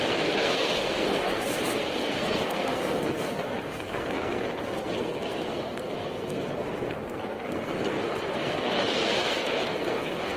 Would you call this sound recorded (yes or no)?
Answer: no